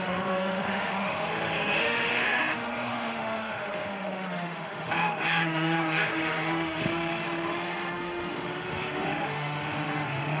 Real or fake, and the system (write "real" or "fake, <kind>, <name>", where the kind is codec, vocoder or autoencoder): fake, autoencoder, DAC-VAE